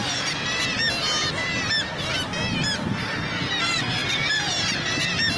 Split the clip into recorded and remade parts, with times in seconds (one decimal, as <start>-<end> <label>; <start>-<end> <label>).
0.0-5.4 recorded